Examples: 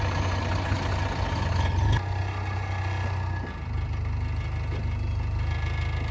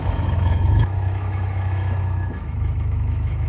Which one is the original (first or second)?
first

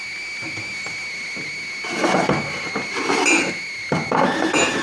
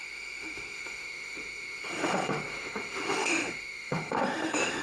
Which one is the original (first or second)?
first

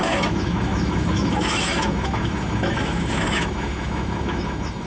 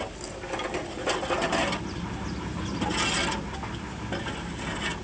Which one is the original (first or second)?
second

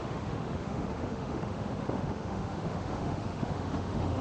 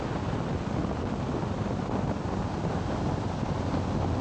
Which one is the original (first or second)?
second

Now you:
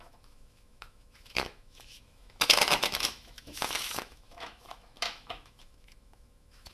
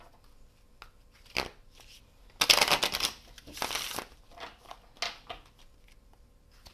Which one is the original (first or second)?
second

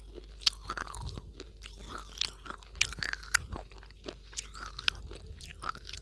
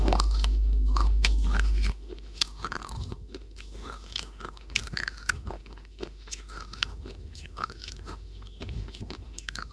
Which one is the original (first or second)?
first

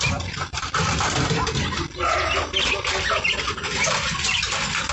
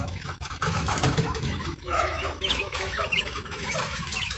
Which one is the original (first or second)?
first